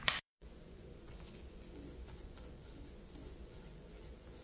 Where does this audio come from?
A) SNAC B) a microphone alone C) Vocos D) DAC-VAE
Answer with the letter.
C